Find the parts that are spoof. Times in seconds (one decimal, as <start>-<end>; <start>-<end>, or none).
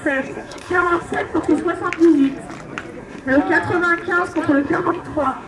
0.0-1.5; 3.0-3.4; 4.6-5.5